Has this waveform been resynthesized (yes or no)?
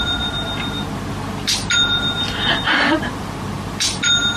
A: no